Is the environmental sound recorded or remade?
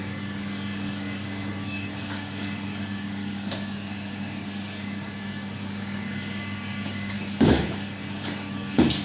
remade